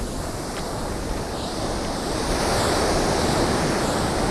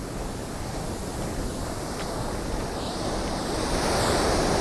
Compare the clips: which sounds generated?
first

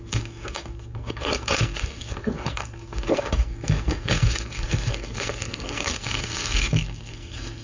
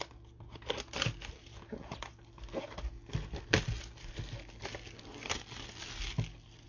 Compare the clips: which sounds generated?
first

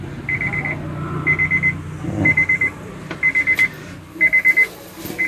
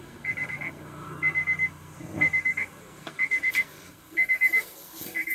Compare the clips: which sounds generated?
second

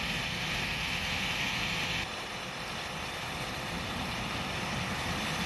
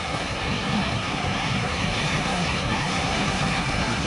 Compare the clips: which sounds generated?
second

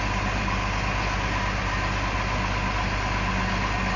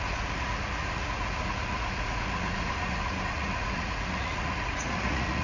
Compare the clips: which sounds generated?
second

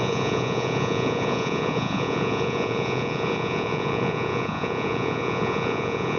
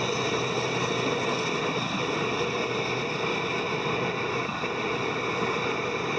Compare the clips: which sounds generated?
first